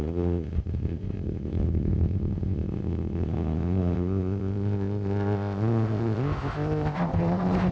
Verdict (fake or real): fake